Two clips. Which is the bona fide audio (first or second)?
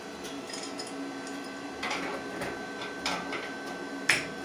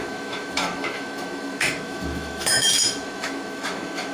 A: first